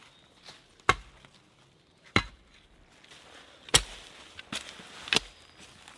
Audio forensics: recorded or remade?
recorded